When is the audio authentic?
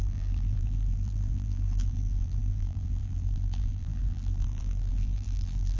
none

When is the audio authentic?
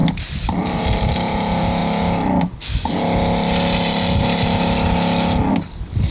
1.8-5.5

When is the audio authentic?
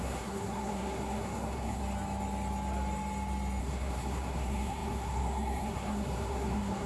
1.8-3.6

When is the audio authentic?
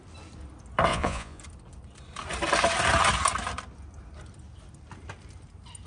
0.0-0.9; 1.4-5.9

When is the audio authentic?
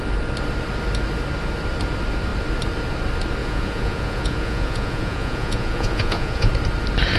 0.0-3.4; 6.5-7.2